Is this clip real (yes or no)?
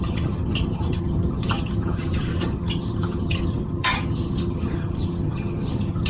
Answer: no